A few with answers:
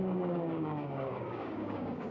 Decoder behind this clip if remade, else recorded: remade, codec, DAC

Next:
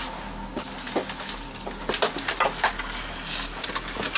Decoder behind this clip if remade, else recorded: recorded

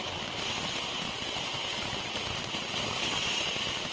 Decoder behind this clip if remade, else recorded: recorded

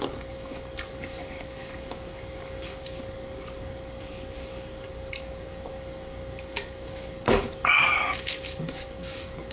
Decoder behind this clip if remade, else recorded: remade, codec, DAC